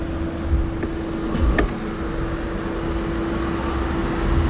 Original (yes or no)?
yes